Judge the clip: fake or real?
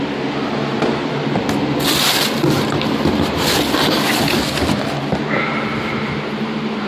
real